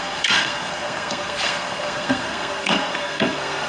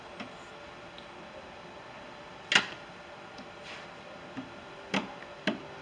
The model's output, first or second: first